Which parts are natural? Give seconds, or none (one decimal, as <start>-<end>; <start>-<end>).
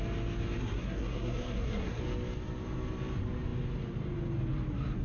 0.0-0.6; 2.0-5.0